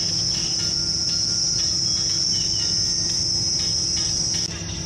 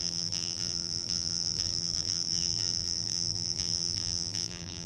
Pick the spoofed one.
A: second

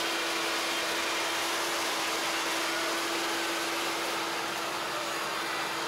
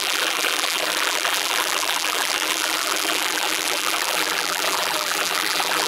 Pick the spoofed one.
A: second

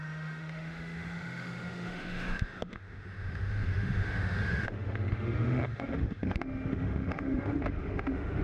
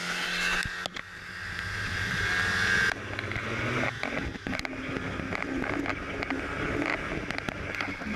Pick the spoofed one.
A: first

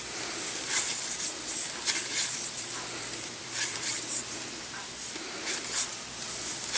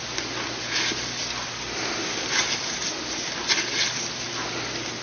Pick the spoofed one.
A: first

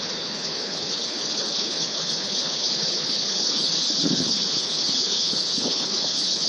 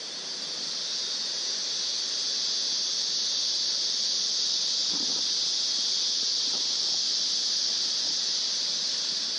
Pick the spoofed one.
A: first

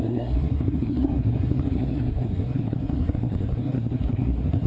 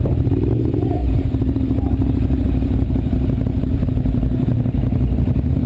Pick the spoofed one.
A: first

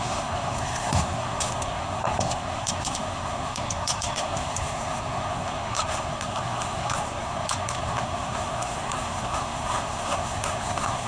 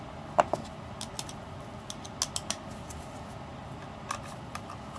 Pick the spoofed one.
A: first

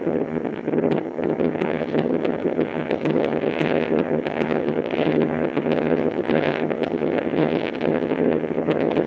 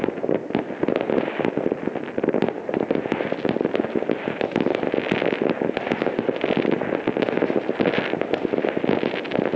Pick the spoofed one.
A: first